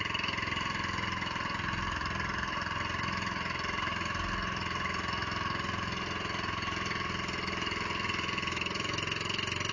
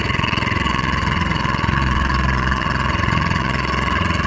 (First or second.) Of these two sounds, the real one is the first